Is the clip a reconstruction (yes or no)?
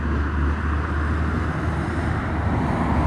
no